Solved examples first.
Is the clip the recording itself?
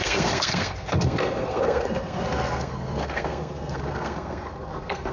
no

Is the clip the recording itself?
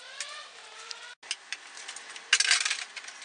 yes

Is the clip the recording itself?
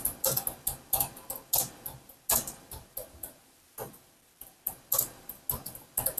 yes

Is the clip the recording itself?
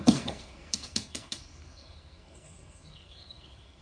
no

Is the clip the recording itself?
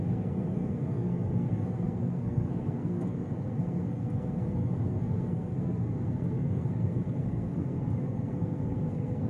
no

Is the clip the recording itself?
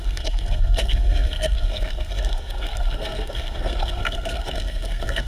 no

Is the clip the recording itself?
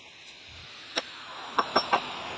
yes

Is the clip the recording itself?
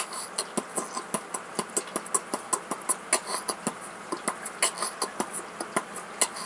yes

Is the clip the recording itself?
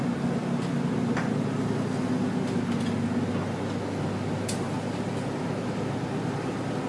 yes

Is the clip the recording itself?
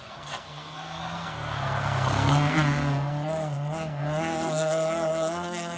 no